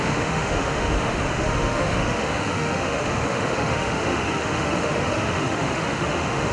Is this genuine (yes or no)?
no